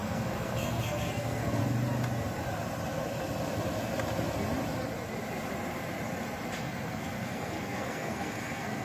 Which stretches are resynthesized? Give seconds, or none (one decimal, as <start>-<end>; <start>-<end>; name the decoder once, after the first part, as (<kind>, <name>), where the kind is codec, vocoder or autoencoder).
0.0-1.6 (codec, SNAC); 6.6-8.8